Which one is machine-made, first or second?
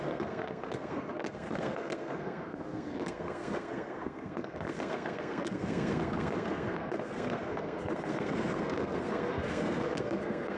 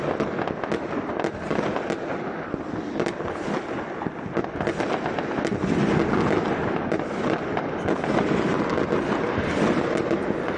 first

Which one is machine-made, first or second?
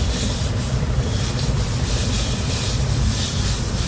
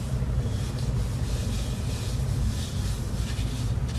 first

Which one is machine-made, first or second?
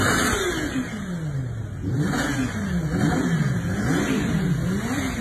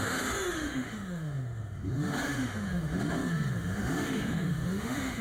second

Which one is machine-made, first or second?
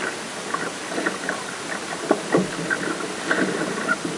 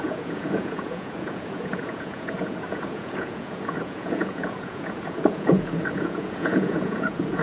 second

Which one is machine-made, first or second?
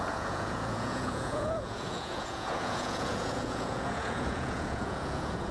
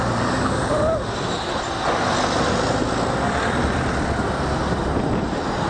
first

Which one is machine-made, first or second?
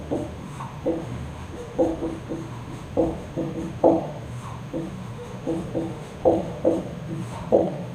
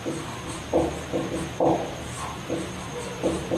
first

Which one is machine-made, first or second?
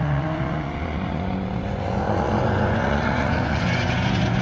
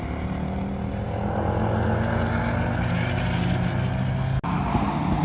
first